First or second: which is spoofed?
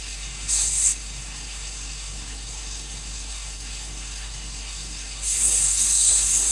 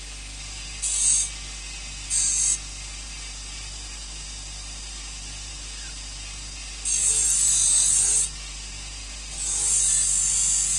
first